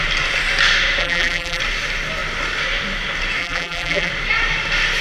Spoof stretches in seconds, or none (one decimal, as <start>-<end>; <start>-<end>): 1.0-1.6; 3.4-4.1